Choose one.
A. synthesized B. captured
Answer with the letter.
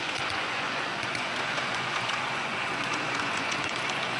A